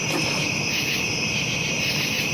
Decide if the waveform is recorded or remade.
remade